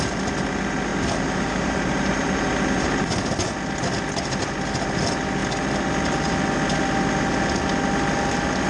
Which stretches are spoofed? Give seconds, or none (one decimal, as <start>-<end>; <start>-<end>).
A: 0.9-3.2